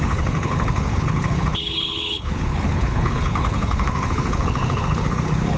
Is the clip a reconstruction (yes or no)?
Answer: yes